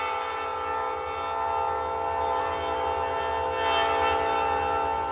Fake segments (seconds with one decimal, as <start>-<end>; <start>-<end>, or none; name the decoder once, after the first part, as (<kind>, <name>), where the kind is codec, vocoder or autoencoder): none